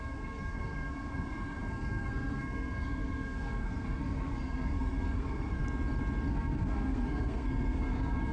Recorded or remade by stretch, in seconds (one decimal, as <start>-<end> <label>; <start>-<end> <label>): 0.0-5.6 remade; 5.6-6.3 recorded; 6.3-8.3 remade